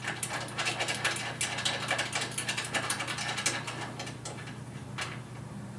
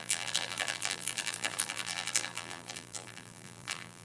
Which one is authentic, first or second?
first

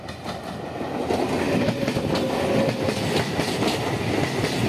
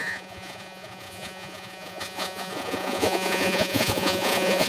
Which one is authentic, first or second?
first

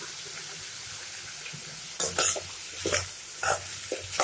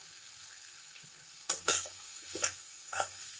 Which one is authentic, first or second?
first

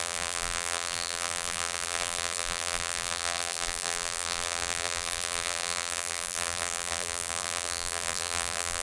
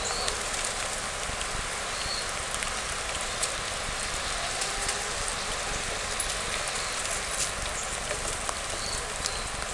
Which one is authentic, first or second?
second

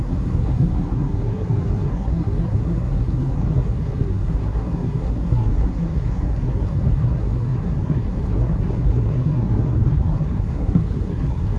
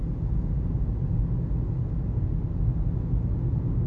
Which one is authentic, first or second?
second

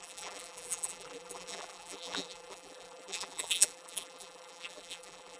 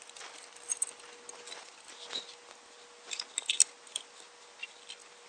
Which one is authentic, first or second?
second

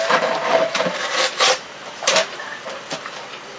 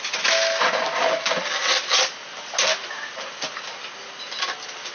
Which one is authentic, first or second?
second